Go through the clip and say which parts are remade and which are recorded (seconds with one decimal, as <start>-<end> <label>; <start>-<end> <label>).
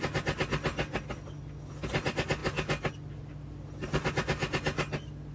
0.0-5.3 recorded